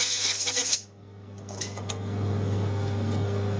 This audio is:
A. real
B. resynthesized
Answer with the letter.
B